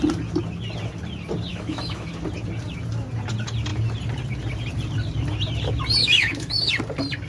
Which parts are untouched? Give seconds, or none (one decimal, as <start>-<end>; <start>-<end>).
0.0-1.5; 2.1-6.0; 6.7-7.3